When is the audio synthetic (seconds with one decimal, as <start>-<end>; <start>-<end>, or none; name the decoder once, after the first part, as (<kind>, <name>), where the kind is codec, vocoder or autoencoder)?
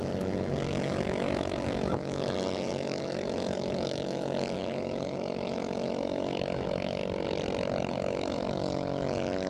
0.0-7.0 (autoencoder, DAC-VAE); 7.9-9.5